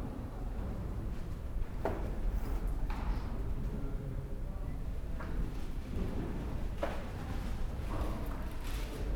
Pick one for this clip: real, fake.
fake